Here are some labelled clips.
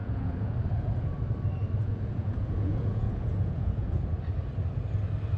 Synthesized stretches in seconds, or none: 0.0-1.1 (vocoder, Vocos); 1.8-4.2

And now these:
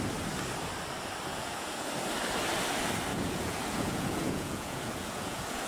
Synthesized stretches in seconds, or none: 1.3-1.9 (vocoder, Vocos); 3.1-5.7